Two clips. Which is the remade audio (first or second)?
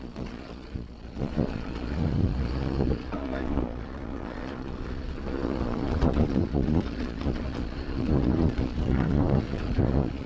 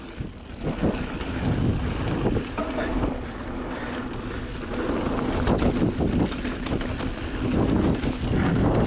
first